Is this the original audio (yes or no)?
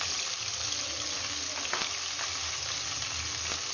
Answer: yes